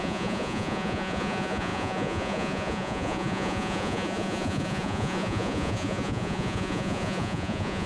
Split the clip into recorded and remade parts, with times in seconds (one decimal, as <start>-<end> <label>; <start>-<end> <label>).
0.0-7.9 remade